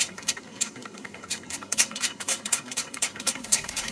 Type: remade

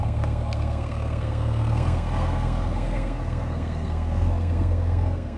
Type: remade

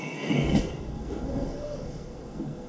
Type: remade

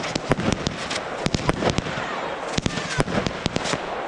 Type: recorded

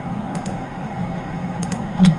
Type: remade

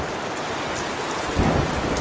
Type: recorded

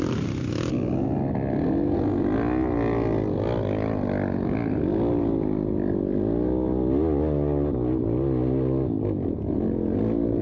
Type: recorded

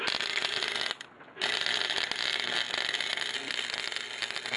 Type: recorded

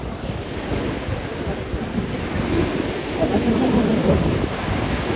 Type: recorded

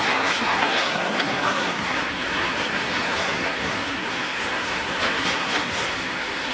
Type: remade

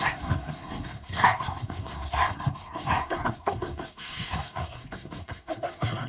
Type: remade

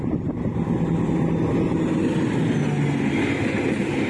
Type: recorded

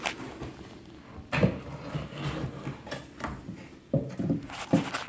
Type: recorded